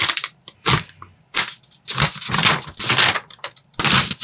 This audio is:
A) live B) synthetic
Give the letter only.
A